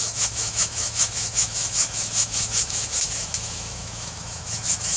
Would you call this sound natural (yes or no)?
no